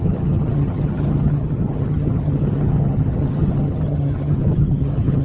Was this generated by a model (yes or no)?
yes